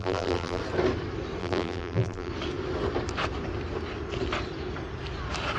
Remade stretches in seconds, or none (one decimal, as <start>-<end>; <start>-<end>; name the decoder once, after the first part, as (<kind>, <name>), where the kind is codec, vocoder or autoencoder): 0.0-0.6 (vocoder, BigVGAN v2); 1.4-2.3